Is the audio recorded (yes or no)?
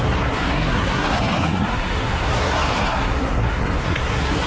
no